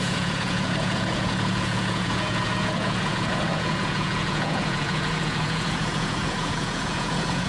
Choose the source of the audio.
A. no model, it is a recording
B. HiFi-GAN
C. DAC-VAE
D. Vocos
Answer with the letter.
D